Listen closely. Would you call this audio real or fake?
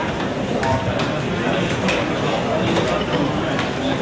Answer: real